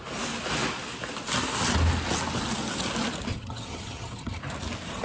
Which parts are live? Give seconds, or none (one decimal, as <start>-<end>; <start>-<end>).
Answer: 0.0-3.3; 4.4-5.0